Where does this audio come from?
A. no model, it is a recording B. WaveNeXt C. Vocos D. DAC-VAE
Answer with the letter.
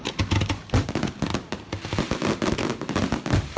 A